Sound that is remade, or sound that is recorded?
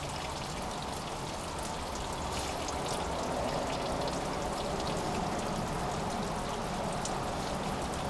recorded